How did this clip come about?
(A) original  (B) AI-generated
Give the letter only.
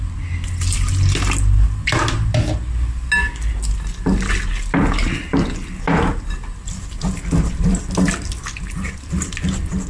A